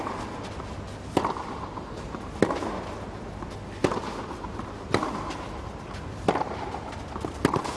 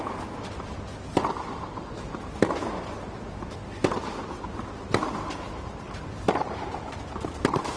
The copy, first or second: second